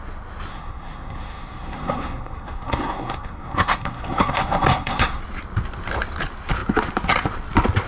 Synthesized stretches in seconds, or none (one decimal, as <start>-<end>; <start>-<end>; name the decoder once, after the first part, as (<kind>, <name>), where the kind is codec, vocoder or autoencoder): 0.5-5.2 (codec, SNAC)